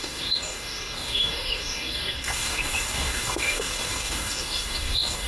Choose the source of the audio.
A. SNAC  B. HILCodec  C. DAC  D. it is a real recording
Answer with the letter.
C